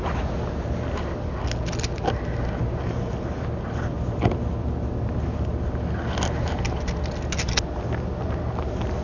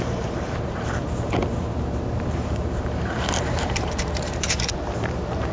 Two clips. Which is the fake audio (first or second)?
second